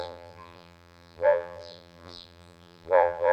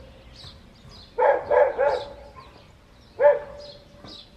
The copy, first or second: first